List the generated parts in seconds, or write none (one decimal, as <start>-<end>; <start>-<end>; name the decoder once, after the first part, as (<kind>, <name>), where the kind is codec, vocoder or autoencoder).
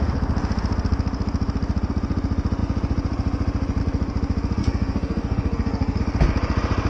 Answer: 4.6-6.0 (codec, SNAC)